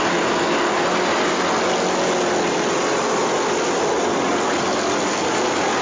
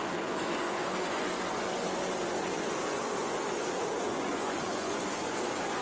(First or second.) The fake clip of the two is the second